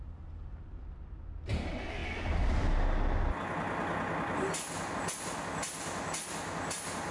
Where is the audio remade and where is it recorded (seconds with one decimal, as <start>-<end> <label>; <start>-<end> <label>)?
0.0-7.1 recorded

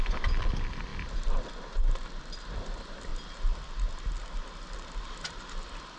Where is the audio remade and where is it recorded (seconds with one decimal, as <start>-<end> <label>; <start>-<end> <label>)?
0.0-0.9 remade; 0.9-2.2 recorded; 2.2-3.1 remade; 3.1-5.3 recorded; 5.3-6.0 remade

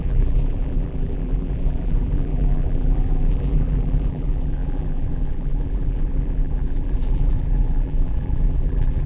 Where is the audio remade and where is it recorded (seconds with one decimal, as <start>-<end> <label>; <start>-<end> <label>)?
0.0-9.1 remade

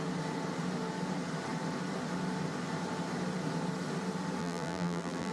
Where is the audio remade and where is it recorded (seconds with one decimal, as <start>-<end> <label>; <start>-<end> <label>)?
0.0-4.4 recorded; 4.4-5.3 remade

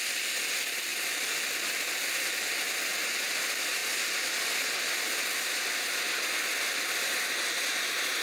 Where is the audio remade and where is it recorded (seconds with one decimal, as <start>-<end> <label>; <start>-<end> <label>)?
0.0-3.8 recorded; 3.8-7.1 remade; 7.1-8.2 recorded

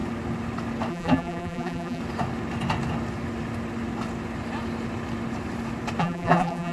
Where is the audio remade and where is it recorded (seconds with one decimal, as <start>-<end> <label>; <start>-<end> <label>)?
0.0-0.9 recorded; 0.9-2.0 remade; 2.0-6.0 recorded; 6.0-6.7 remade

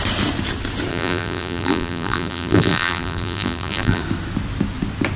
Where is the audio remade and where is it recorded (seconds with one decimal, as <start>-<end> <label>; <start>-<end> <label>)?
0.0-0.9 recorded; 0.9-4.0 remade; 4.0-5.2 recorded

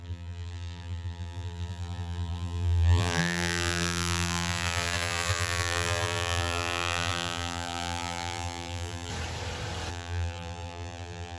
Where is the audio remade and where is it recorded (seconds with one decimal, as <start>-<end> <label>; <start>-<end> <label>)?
0.0-9.1 remade; 9.1-9.9 recorded; 9.9-11.4 remade